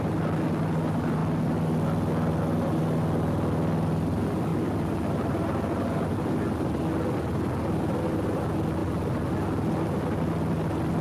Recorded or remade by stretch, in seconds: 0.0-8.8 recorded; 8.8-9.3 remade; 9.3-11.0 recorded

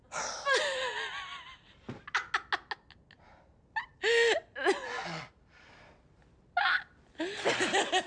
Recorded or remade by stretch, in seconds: 0.0-1.3 recorded; 1.3-2.0 remade; 2.0-8.1 recorded

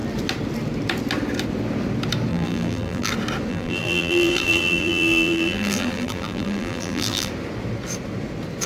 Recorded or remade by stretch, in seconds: 0.0-2.3 recorded; 2.3-3.1 remade; 3.1-3.5 recorded; 3.5-7.3 remade; 7.3-8.7 recorded